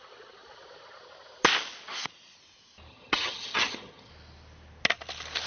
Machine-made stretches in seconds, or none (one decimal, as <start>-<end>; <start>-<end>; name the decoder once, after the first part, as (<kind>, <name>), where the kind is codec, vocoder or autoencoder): 2.9-4.1 (vocoder, HiFi-GAN)